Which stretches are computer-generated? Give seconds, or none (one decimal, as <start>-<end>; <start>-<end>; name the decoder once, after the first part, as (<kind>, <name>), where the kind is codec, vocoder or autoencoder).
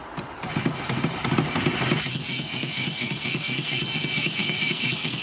2.1-5.2 (codec, SNAC)